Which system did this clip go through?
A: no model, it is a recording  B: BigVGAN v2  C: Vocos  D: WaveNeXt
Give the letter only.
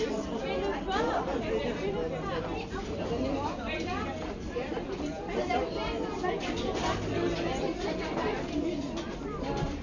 A